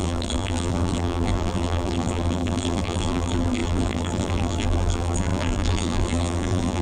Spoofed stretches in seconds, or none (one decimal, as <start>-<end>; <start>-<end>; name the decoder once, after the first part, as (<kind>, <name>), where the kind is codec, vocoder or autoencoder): 0.0-6.8 (vocoder, BigVGAN v2)